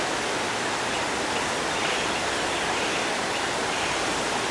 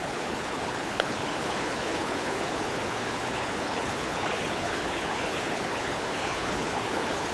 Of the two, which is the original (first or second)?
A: first